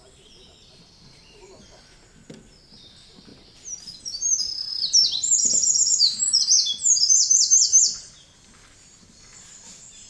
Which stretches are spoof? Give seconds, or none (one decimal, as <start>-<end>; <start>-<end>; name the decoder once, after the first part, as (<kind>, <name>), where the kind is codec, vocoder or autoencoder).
4.7-5.3 (vocoder, BigVGAN v2)